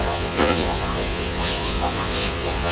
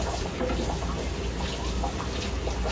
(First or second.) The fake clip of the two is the first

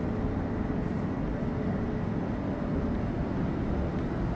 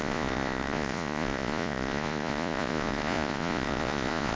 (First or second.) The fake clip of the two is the second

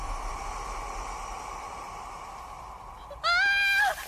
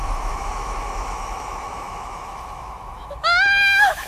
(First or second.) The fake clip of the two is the second